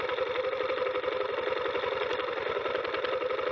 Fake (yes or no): no